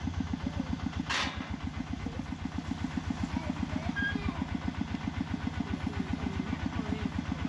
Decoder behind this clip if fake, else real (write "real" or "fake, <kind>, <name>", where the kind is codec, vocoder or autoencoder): real